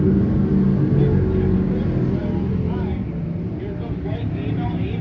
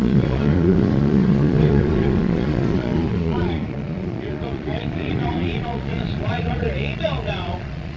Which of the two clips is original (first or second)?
first